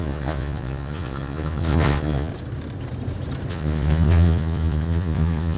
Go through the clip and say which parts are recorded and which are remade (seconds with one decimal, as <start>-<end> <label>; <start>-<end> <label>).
0.0-2.3 remade; 2.3-3.5 recorded; 3.5-5.6 remade

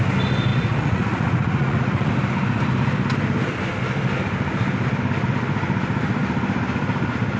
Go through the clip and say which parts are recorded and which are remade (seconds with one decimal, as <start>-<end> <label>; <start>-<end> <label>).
0.0-0.5 recorded; 0.5-2.1 remade; 2.1-7.4 recorded

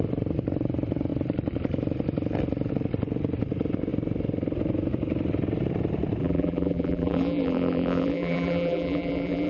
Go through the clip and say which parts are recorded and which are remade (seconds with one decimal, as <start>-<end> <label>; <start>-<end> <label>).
0.0-6.2 recorded; 6.2-9.5 remade

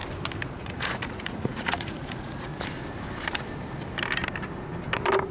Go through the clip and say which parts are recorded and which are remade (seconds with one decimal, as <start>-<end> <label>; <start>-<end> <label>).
0.0-0.6 recorded; 0.6-2.5 remade; 2.5-5.3 recorded